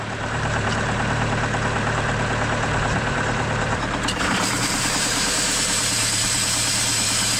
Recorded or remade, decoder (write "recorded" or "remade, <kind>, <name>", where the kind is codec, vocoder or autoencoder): remade, vocoder, BigVGAN v2